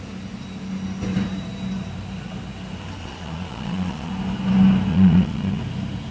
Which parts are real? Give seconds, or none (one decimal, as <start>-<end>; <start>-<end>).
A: 0.0-3.0; 4.1-4.9; 5.6-6.1